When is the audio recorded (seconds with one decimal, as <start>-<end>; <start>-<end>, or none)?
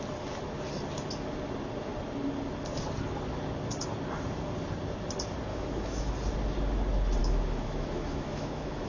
0.0-5.5; 6.1-7.2